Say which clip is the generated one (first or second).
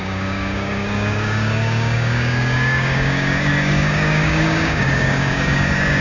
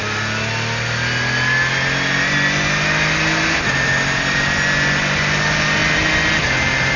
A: first